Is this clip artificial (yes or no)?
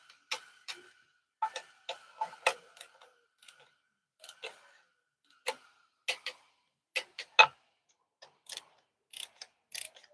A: no